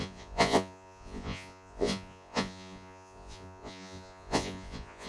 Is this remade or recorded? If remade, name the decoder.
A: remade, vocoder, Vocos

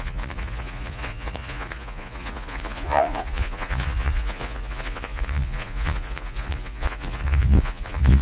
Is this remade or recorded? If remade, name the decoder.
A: remade, vocoder, Vocos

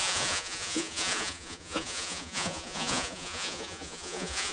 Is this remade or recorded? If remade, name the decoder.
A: remade, vocoder, Vocos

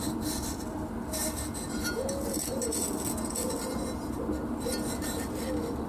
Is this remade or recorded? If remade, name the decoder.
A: recorded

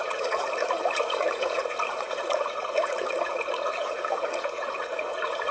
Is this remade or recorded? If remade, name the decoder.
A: remade, vocoder, Vocos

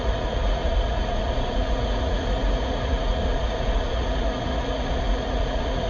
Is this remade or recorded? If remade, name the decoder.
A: remade, vocoder, Vocos